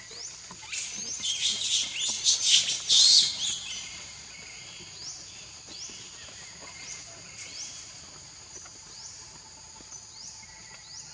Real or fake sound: real